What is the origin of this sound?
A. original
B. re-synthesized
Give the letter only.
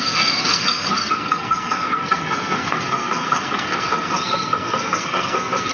B